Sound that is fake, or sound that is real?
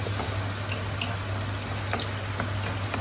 real